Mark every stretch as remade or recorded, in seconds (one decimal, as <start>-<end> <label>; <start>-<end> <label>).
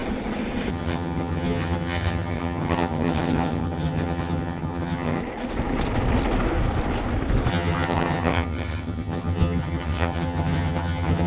0.0-0.7 recorded; 0.7-5.2 remade; 5.2-7.5 recorded; 7.5-11.3 remade